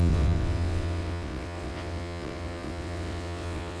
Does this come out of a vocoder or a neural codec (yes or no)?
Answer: yes